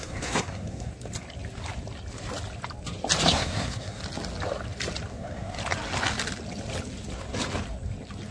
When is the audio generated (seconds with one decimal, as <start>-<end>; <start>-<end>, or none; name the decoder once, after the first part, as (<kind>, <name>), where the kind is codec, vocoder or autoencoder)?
0.0-0.9 (codec, SNAC); 3.3-4.0; 5.1-5.6